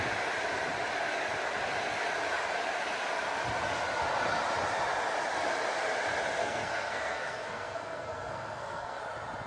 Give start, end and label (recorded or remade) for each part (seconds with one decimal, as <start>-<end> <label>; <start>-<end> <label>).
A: 0.0-6.4 recorded; 6.4-9.0 remade; 9.0-9.5 recorded